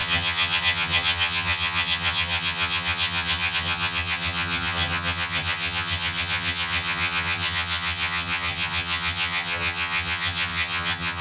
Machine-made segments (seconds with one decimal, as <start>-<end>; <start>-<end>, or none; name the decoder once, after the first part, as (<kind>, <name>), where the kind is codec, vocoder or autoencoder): 0.0-11.2 (vocoder, HiFi-GAN)